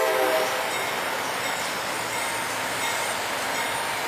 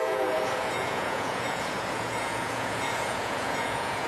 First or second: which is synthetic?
second